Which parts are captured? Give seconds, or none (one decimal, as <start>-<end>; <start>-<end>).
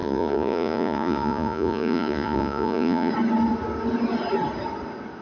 3.1-5.2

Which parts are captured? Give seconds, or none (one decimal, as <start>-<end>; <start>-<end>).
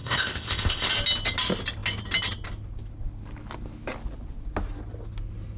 0.9-5.6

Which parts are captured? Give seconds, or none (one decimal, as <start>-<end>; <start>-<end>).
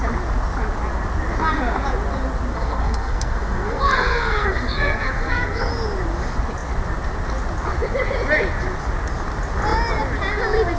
0.0-2.5; 5.7-10.8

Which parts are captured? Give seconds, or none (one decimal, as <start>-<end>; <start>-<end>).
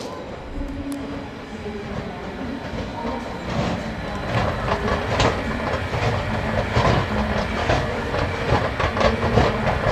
0.0-7.6; 8.1-9.9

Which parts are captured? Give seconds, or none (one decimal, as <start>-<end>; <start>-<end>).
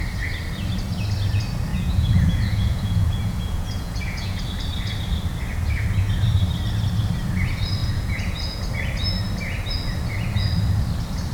0.0-1.7; 4.4-7.8; 8.6-11.3